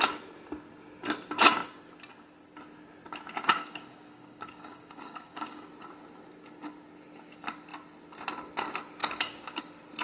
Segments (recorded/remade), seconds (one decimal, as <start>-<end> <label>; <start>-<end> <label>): 0.0-3.5 recorded; 3.5-5.7 remade; 5.7-9.0 recorded; 9.0-9.6 remade; 9.6-10.0 recorded